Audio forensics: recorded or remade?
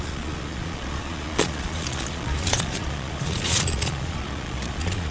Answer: remade